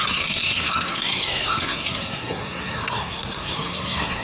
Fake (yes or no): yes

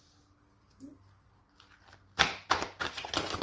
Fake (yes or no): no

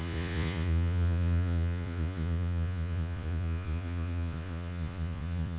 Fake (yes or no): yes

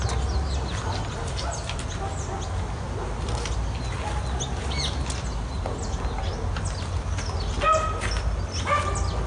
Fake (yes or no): no